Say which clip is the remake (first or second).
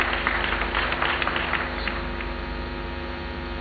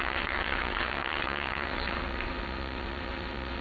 second